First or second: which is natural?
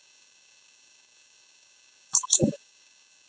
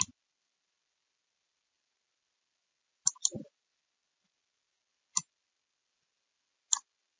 second